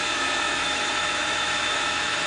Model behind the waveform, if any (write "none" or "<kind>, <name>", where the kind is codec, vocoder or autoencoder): autoencoder, DAC-VAE